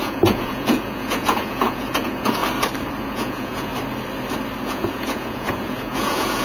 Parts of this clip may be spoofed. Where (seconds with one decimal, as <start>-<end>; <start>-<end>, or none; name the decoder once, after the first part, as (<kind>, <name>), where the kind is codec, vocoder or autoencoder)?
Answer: 0.0-2.4 (vocoder, Vocos); 3.0-3.7; 4.6-6.4